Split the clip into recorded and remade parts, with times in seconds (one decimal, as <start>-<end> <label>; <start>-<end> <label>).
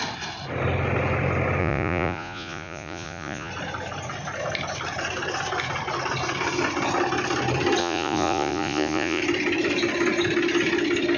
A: 0.0-1.6 recorded; 1.6-3.5 remade; 3.5-7.8 recorded; 7.8-9.2 remade; 9.2-11.2 recorded